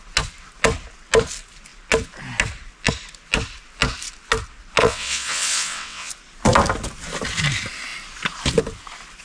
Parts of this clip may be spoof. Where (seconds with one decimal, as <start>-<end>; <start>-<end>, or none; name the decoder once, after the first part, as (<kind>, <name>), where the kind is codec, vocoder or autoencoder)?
4.8-6.1 (vocoder, WaveNeXt)